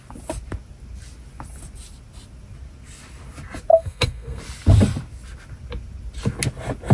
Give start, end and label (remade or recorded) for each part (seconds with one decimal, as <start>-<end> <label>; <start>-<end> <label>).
0.0-3.7 recorded; 3.7-4.4 remade; 4.4-6.9 recorded